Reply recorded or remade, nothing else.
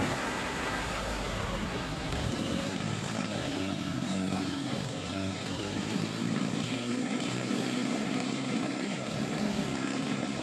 remade